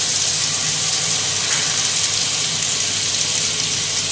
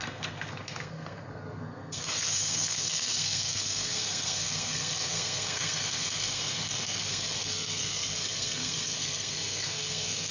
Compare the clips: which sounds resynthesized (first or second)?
second